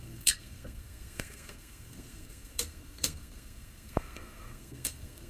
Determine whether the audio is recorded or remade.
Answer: remade